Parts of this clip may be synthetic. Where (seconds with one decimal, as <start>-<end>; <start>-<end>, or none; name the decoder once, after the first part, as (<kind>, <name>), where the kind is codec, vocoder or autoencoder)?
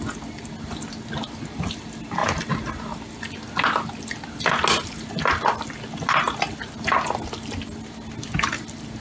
none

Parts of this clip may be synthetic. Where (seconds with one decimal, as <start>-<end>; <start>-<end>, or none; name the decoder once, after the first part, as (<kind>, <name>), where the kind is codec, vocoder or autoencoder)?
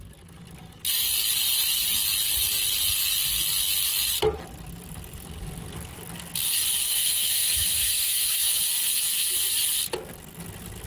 6.9-8.6 (autoencoder, DAC-VAE)